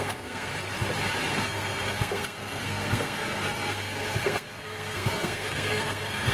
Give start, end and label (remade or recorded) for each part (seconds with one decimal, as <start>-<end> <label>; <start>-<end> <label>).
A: 0.0-0.5 remade; 0.5-1.3 recorded; 1.3-6.3 remade